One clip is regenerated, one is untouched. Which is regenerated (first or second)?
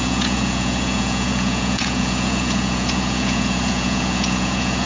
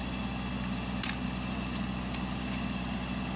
first